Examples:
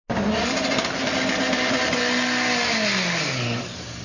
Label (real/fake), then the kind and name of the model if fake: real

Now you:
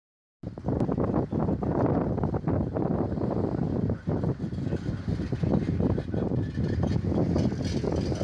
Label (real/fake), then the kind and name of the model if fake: real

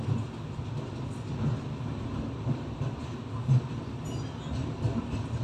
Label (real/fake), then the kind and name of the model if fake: real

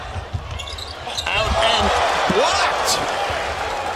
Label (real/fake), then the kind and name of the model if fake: real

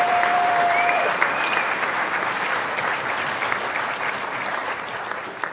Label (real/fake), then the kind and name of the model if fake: fake, vocoder, BigVGAN v2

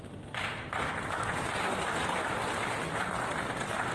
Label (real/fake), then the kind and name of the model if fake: real